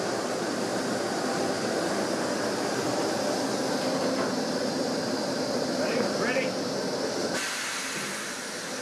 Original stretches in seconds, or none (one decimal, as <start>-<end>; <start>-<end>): none